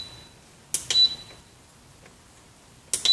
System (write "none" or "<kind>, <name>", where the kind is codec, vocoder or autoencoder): none